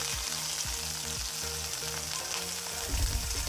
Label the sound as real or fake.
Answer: real